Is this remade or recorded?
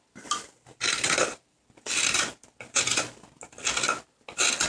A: recorded